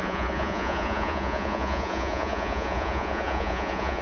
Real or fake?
fake